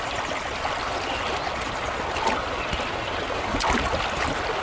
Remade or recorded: recorded